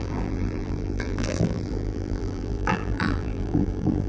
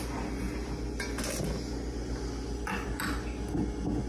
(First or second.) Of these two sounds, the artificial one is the first